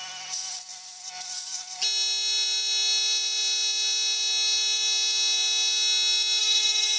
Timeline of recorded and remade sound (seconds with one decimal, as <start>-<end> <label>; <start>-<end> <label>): 0.0-6.4 recorded; 6.4-7.0 remade